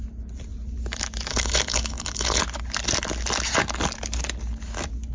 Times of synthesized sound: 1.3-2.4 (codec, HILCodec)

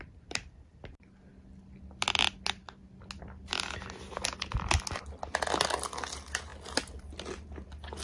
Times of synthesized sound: none

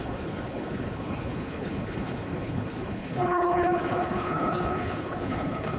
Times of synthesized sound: 0.0-5.8 (codec, HILCodec)